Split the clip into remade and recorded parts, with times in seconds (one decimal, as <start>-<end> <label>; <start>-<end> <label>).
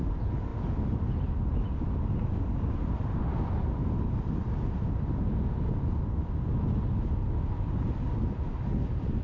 0.0-9.2 recorded